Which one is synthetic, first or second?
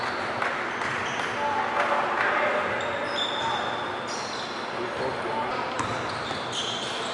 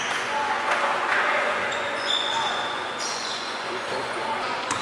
second